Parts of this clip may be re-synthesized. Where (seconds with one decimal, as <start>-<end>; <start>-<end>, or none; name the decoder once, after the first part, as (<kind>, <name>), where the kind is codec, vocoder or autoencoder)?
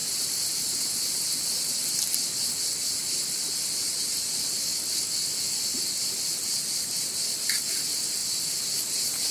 0.0-2.6 (vocoder, BigVGAN v2); 8.2-9.3